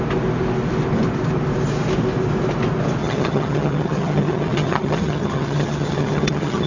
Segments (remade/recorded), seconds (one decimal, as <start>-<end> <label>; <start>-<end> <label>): 0.0-3.0 recorded; 3.0-6.7 remade